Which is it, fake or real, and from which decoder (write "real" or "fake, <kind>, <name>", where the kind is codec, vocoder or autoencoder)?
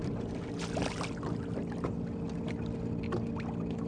real